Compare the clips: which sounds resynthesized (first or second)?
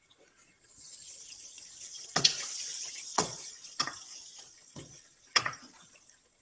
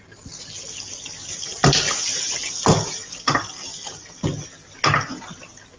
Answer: first